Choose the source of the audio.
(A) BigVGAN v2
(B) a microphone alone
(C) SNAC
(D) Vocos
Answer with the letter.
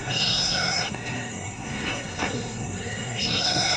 C